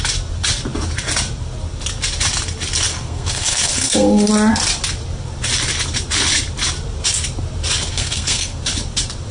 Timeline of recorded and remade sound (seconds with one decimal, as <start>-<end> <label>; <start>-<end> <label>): 0.0-2.9 recorded; 2.9-4.3 remade; 4.3-7.9 recorded; 7.9-8.6 remade; 8.6-9.3 recorded

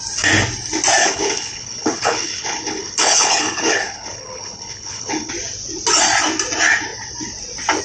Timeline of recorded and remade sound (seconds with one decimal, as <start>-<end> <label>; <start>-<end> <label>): 0.0-1.0 recorded; 1.0-5.3 remade; 5.3-7.8 recorded

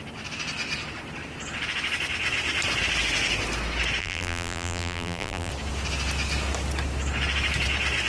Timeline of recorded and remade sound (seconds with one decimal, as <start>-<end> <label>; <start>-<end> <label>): 0.0-4.0 recorded; 4.0-5.5 remade; 5.5-8.1 recorded

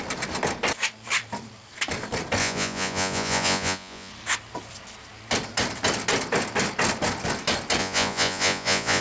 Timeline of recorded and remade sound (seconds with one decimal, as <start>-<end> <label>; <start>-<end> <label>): 0.0-2.4 recorded; 2.4-4.1 remade; 4.1-7.8 recorded; 7.8-9.0 remade